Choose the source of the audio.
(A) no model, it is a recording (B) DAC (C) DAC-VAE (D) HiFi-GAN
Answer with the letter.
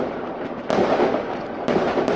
A